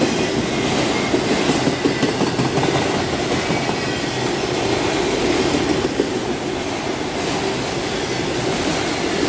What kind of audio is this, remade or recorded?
recorded